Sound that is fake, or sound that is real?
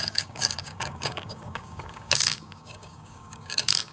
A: fake